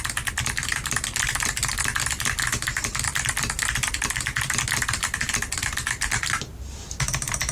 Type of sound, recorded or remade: recorded